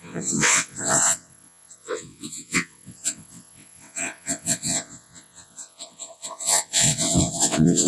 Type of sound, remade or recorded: remade